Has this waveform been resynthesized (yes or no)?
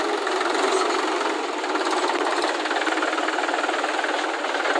no